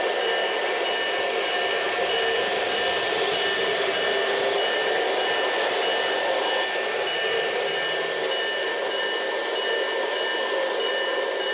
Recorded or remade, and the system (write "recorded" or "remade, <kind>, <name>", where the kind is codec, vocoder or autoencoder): recorded